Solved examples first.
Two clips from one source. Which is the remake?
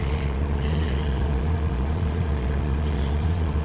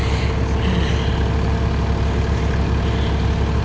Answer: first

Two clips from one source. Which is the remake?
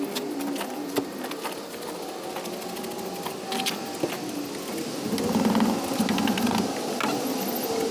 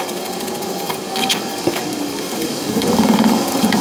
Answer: second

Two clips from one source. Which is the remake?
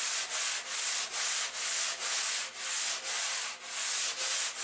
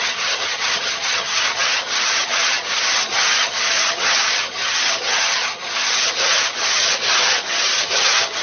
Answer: second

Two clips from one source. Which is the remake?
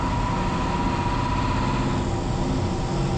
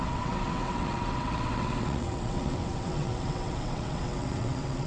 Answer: second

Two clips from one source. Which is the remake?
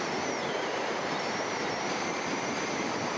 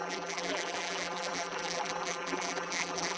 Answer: second